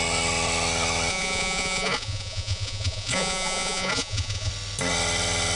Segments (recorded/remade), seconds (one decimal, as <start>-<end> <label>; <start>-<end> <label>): 0.0-1.1 recorded; 1.1-4.5 remade; 4.5-5.6 recorded